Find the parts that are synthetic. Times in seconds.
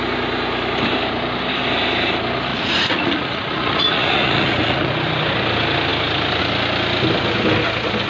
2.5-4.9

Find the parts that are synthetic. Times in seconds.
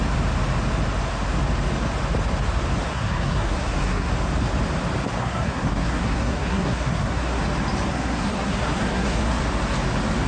2.9-4.1; 5.2-7.4; 7.9-9.4